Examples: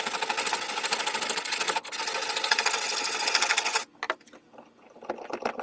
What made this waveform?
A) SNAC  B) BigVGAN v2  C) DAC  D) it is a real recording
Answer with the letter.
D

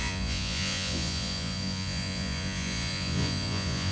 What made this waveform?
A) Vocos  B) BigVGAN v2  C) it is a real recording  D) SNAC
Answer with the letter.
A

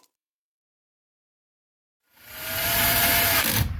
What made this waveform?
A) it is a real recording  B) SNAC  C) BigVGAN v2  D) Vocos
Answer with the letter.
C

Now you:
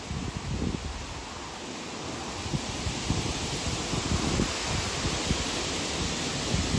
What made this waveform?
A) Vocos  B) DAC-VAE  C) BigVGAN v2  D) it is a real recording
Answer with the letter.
D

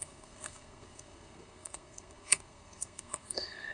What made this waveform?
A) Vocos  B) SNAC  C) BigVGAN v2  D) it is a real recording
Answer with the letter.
B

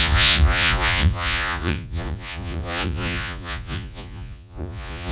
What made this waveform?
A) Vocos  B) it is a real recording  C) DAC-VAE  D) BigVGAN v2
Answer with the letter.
A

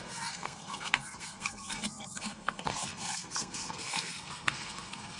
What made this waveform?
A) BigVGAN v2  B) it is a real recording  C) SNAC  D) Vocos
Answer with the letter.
C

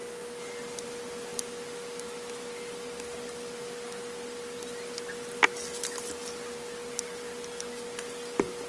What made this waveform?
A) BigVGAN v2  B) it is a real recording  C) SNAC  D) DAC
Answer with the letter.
B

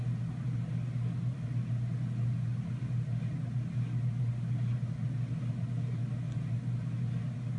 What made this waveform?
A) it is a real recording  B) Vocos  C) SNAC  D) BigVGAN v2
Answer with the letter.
A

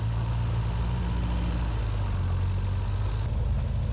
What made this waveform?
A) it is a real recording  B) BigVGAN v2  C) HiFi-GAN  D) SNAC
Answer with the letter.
A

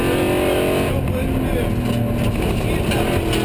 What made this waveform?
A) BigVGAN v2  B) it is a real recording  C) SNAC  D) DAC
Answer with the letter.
B